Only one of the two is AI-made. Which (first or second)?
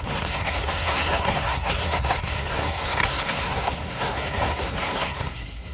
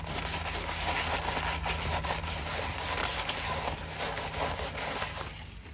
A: first